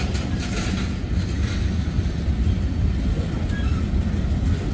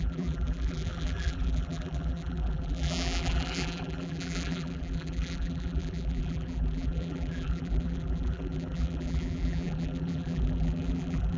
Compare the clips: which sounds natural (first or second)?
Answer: first